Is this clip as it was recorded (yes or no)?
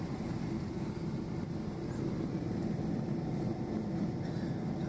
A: yes